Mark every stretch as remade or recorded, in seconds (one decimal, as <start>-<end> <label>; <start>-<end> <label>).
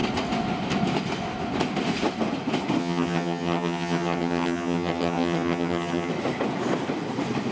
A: 0.0-2.8 recorded; 2.8-6.1 remade; 6.1-7.5 recorded